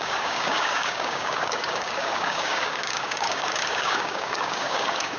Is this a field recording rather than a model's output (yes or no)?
no